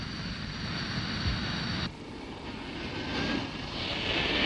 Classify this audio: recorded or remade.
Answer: recorded